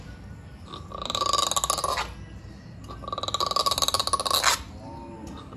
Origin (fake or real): real